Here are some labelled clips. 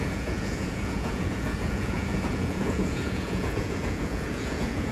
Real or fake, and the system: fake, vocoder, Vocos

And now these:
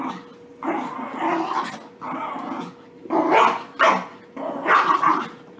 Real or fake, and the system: real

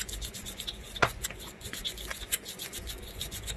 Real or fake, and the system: fake, vocoder, Vocos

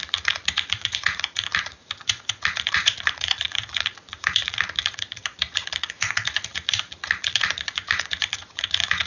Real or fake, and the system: fake, vocoder, Vocos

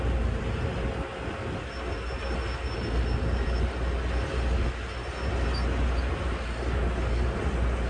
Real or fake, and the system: real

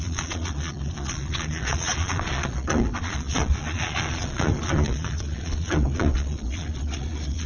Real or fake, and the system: fake, vocoder, Vocos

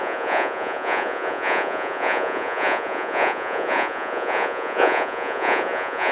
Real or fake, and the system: fake, vocoder, Vocos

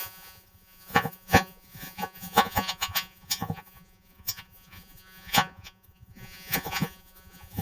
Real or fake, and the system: fake, vocoder, Vocos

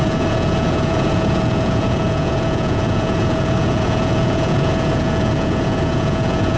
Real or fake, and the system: fake, vocoder, Vocos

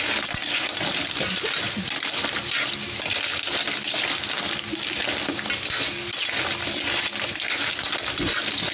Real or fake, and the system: real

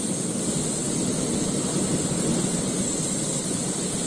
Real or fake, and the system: real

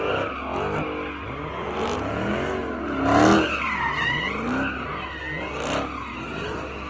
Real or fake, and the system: real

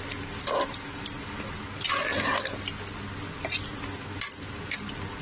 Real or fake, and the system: real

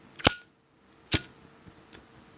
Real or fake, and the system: real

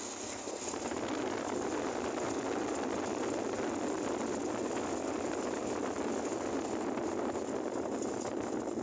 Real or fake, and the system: real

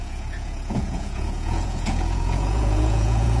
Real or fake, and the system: fake, vocoder, Vocos